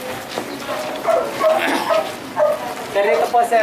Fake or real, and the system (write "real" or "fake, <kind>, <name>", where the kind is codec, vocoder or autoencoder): real